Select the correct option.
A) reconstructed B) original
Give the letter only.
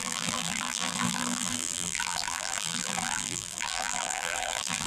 A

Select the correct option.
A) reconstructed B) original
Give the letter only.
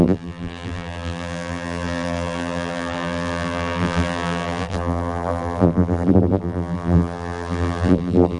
A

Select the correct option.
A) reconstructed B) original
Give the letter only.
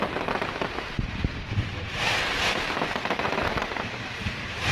A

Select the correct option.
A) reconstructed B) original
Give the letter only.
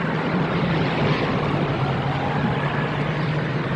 B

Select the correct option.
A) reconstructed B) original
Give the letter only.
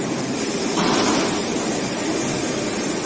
B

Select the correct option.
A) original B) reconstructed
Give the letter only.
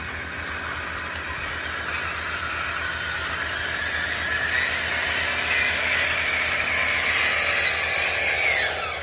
A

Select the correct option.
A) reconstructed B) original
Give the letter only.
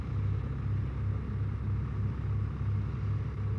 B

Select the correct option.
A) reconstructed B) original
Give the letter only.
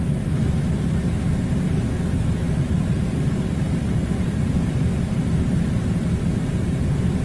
A